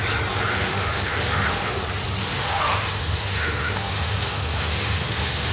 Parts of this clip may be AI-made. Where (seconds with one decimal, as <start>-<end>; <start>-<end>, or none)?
0.5-1.8; 2.2-5.5